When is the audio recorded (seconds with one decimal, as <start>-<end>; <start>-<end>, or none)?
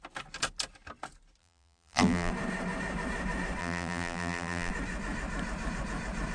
0.0-1.4; 2.3-3.6; 4.7-6.3